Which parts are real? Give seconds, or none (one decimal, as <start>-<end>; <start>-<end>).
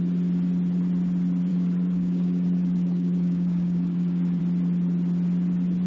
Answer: 0.0-1.5; 4.4-5.9